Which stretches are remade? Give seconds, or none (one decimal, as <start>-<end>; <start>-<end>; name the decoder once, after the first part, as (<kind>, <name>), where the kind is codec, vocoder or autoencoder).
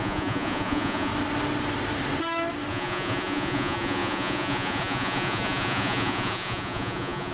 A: 0.0-1.1 (vocoder, Vocos); 2.7-7.3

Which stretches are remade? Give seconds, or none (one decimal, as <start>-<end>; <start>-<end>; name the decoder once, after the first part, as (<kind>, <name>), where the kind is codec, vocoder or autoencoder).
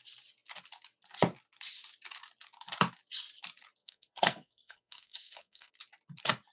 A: 3.8-5.7 (codec, SNAC)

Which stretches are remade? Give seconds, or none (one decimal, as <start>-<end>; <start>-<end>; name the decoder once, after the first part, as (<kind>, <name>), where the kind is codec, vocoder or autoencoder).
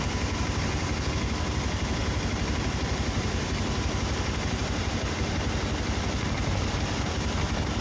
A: none